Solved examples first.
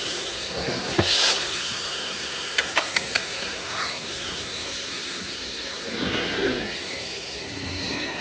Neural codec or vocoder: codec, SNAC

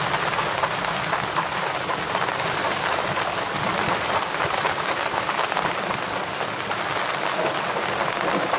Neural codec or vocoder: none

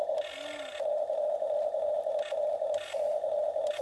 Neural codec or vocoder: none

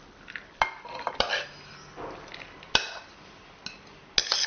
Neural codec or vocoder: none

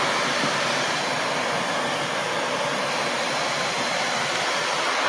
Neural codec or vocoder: none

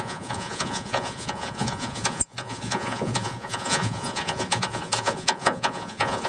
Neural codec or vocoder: vocoder, Vocos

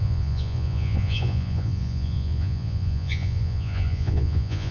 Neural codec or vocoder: vocoder, Vocos